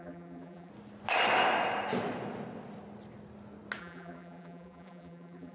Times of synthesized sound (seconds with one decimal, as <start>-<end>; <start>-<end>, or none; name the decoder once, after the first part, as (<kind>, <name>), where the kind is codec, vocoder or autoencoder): 0.0-0.7 (vocoder, BigVGAN v2); 3.8-5.5